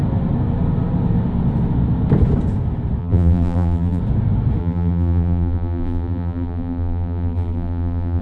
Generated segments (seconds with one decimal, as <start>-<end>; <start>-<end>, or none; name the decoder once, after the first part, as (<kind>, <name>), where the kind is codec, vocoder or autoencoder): 3.0-4.0 (vocoder, BigVGAN v2); 4.6-8.2